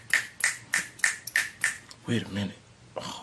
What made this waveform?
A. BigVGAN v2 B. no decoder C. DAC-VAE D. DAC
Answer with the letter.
B